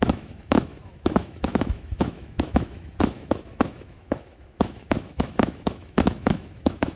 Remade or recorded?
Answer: remade